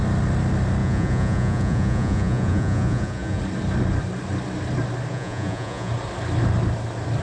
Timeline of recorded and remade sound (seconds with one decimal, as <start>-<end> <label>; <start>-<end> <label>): 0.0-0.8 recorded; 0.8-3.4 remade; 3.4-5.1 recorded; 5.1-5.9 remade; 5.9-7.2 recorded